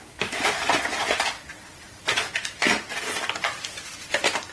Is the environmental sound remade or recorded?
recorded